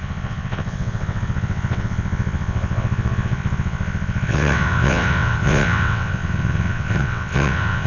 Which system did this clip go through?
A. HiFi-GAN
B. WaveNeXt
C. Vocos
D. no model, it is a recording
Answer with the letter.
B